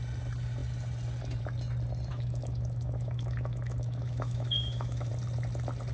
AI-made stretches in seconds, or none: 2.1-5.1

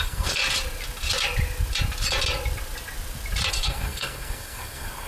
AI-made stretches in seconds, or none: 0.0-0.4; 3.5-5.1

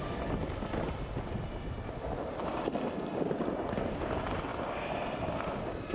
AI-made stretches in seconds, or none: none

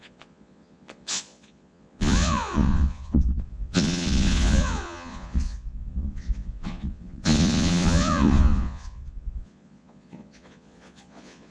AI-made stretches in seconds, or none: 0.0-11.5

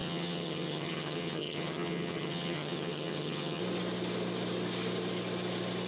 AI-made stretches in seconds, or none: 0.0-3.6